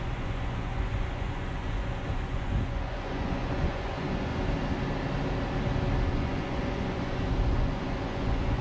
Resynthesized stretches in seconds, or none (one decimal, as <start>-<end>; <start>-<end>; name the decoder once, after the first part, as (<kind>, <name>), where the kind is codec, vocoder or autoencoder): 0.0-4.3 (vocoder, Vocos); 6.1-8.6